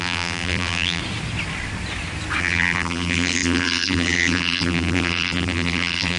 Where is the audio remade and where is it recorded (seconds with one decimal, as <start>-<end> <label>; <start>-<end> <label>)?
0.0-1.0 remade; 1.0-2.4 recorded; 2.4-6.2 remade